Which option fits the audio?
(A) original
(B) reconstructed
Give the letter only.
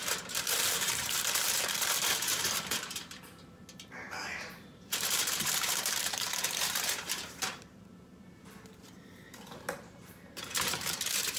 B